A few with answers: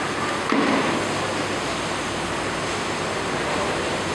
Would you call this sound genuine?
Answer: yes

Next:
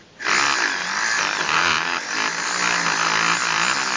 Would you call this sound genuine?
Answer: yes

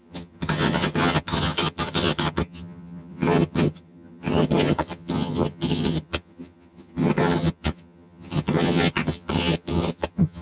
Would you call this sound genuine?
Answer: no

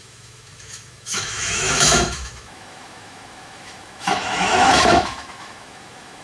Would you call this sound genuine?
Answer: no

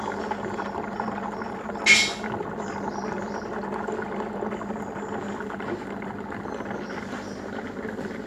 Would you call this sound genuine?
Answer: yes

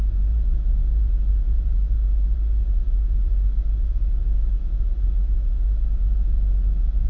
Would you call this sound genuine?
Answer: no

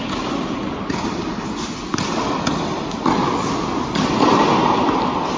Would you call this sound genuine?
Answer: yes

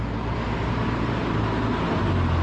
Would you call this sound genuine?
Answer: yes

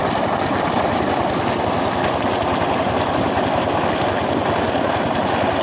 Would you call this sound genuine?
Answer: yes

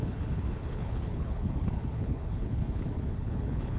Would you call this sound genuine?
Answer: no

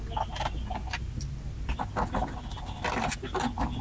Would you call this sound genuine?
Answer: yes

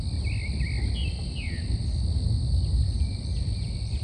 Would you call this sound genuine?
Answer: yes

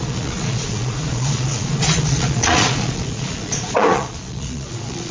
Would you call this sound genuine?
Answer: no